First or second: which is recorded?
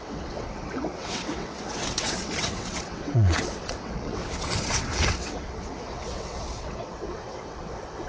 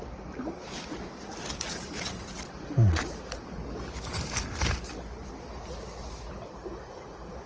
second